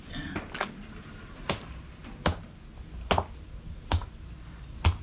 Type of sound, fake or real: real